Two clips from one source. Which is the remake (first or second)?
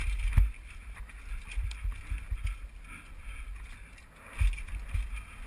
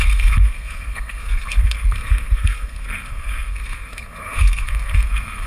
second